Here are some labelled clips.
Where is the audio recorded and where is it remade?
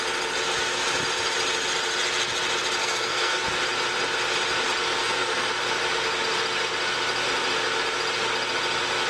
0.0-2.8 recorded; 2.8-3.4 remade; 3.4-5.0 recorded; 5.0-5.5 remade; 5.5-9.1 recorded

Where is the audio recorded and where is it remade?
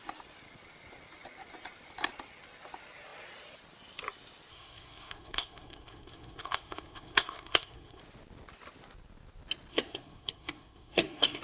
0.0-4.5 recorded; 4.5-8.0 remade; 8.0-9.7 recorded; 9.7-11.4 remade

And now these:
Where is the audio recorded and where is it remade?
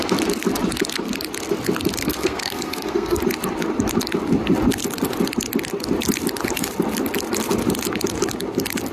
0.0-2.0 recorded; 2.0-3.2 remade; 3.2-8.9 recorded